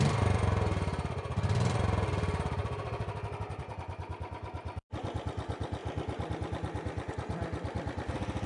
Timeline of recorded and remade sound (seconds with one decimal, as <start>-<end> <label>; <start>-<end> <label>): 0.0-2.6 remade; 2.6-3.7 recorded; 3.7-5.8 remade; 5.8-7.1 recorded; 7.1-8.5 remade